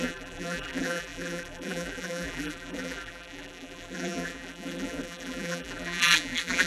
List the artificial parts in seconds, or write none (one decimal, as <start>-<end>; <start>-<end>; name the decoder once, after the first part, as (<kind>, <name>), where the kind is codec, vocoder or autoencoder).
0.0-6.7 (vocoder, BigVGAN v2)

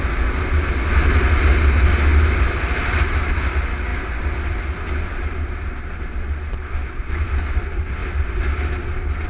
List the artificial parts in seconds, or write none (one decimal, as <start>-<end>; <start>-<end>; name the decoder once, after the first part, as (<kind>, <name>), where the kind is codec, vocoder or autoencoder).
none